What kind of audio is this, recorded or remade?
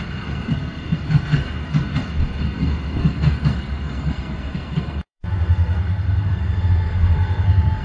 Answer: remade